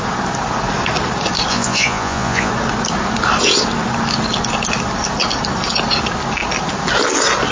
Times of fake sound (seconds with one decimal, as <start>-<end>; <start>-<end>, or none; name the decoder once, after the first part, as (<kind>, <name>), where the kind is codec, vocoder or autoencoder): 1.5-2.5 (vocoder, Vocos)